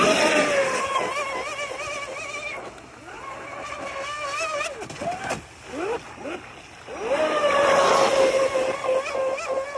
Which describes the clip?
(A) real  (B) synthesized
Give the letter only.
A